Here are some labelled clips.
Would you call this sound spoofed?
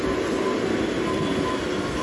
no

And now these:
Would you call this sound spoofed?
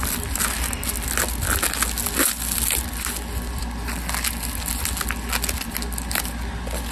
no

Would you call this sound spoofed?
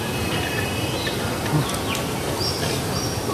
no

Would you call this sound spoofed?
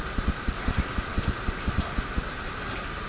no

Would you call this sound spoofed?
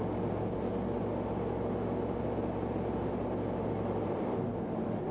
no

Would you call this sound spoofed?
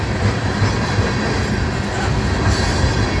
no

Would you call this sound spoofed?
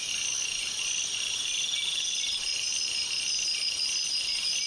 no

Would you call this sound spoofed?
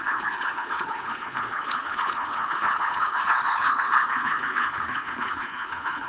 yes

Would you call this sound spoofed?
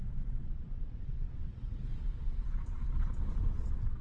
yes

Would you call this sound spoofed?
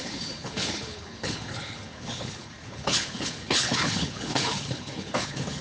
yes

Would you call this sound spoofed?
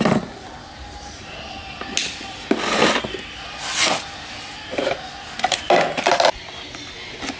no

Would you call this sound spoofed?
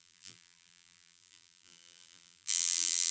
yes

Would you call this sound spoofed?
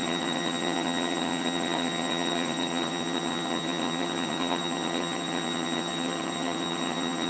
yes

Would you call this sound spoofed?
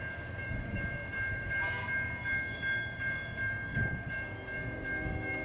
yes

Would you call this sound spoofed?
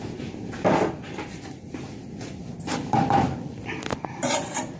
yes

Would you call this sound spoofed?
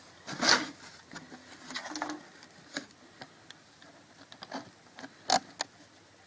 no